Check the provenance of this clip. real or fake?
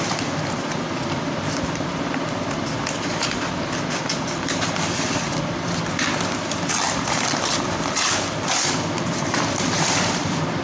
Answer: fake